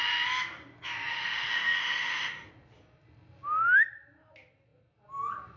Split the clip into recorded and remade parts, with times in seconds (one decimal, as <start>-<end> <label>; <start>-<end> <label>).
0.0-1.1 recorded; 1.1-2.5 remade; 2.5-5.6 recorded